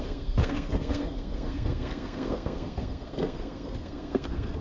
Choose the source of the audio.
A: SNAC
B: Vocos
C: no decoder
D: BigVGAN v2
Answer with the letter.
A